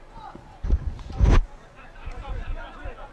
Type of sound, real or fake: fake